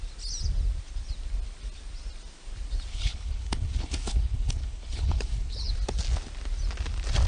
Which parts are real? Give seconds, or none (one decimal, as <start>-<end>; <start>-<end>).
0.0-2.9; 5.7-7.3